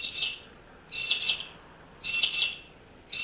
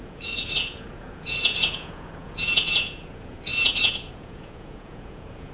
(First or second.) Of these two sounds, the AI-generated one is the second